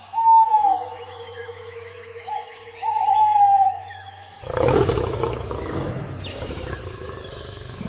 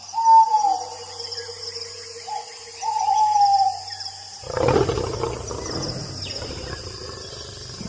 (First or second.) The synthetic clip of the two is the first